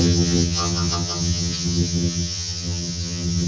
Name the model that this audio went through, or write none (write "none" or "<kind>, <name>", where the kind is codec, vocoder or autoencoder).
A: vocoder, HiFi-GAN